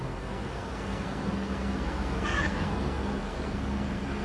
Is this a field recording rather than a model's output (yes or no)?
no